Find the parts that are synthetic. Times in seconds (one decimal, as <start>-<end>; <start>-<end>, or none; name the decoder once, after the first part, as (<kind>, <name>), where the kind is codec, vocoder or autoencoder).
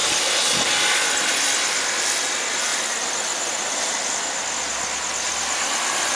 none